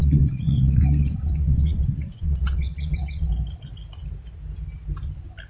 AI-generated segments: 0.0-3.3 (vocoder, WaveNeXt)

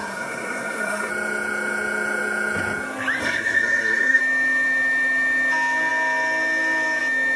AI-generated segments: 0.0-1.1 (codec, SNAC); 3.2-4.2

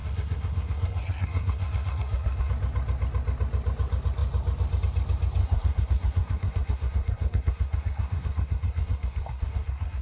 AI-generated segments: 0.0-2.5 (codec, SNAC); 5.4-10.0

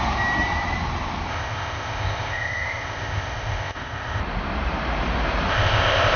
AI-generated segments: 1.3-4.2 (codec, ZipCodec); 5.5-6.2